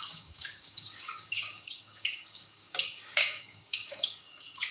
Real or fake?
fake